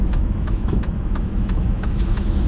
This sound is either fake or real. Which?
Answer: fake